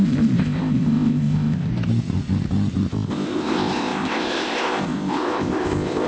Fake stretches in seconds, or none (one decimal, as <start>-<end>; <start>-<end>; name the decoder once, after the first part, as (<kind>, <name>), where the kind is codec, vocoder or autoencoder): 0.0-1.7 (codec, ZipCodec); 2.9-6.1